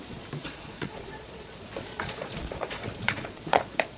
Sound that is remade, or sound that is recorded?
remade